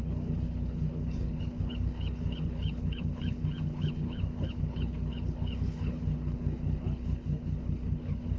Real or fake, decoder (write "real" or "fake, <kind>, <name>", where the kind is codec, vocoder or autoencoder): fake, codec, HILCodec